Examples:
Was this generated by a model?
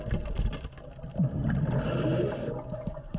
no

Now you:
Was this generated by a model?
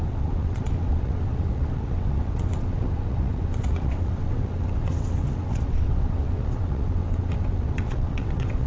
yes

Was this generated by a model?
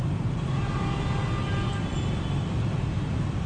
no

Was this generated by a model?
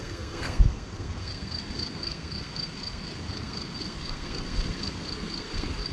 yes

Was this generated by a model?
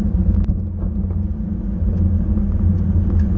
no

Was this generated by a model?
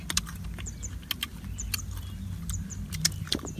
no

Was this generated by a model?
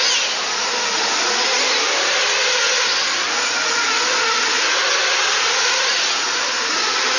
no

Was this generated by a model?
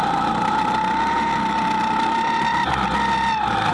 no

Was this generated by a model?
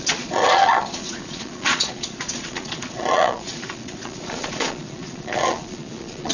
yes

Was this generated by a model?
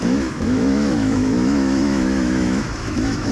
yes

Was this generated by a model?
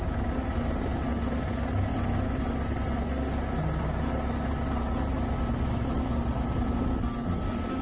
no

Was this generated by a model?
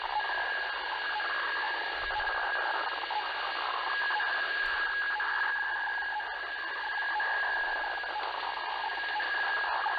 no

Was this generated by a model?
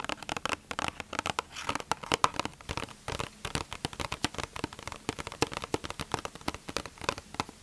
no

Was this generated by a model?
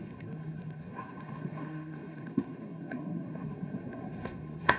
yes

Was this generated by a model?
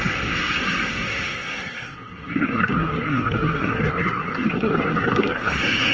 yes